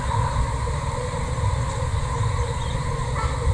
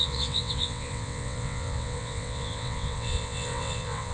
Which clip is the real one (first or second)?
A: first